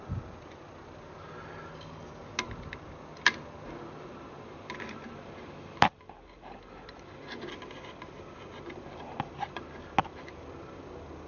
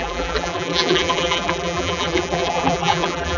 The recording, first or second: first